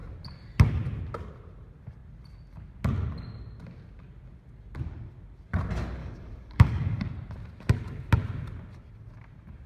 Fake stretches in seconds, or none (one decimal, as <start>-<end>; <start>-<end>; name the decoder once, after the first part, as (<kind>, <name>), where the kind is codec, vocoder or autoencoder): 6.0-7.0 (codec, DAC)